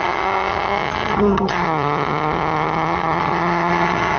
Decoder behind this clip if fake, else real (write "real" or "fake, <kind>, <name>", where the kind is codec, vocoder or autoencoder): fake, vocoder, HiFi-GAN